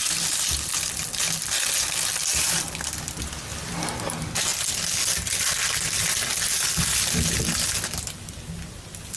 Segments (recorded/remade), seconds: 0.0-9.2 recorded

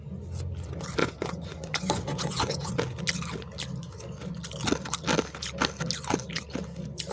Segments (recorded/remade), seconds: 0.0-1.0 recorded; 1.0-2.7 remade; 2.7-7.1 recorded

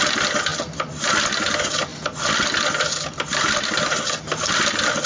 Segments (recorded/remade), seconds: 0.0-5.1 recorded

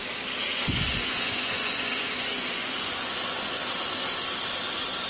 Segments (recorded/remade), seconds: 0.0-0.5 recorded; 0.5-3.6 remade; 3.6-5.1 recorded